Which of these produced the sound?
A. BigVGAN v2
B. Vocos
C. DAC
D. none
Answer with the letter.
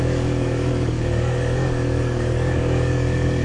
C